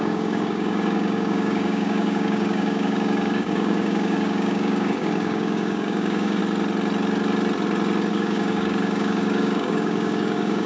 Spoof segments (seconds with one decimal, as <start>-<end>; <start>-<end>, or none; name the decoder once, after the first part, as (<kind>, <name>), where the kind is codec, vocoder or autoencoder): 0.0-6.4 (codec, DAC); 8.1-10.7